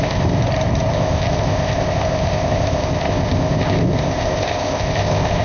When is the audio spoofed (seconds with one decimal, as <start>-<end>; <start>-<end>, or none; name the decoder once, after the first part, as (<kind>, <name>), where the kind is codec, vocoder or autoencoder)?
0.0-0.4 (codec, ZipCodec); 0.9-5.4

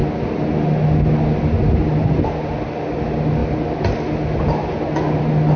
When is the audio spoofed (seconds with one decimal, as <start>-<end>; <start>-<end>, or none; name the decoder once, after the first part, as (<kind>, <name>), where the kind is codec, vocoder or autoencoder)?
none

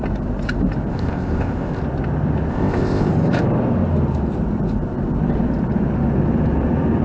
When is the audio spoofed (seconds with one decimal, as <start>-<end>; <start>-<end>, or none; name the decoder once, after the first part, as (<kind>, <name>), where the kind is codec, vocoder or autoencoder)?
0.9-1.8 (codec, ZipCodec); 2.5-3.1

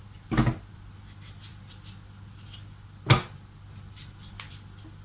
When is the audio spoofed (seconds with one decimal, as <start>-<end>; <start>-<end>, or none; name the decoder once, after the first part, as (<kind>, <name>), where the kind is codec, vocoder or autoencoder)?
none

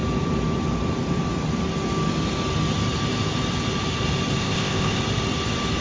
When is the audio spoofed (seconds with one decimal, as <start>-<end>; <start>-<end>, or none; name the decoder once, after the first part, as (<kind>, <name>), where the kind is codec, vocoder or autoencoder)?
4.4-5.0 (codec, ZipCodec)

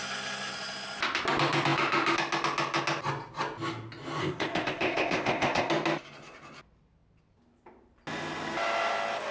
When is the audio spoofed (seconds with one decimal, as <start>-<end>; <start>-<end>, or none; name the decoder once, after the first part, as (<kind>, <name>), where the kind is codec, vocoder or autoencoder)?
4.2-5.7 (codec, ZipCodec)

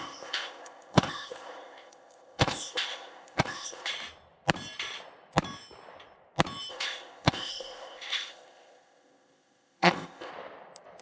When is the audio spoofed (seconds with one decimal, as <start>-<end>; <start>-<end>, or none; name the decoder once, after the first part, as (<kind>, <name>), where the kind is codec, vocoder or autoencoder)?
0.0-3.9 (codec, ZipCodec); 6.7-10.3

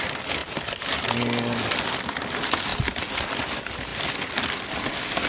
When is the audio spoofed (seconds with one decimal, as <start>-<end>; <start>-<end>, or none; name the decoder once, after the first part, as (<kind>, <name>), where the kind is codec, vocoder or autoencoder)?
none